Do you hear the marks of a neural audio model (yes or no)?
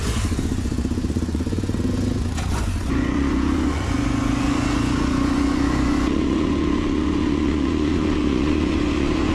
yes